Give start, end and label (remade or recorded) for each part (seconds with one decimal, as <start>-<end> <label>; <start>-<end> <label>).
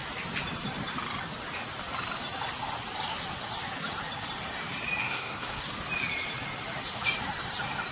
0.0-5.0 recorded; 5.0-5.6 remade; 5.6-7.9 recorded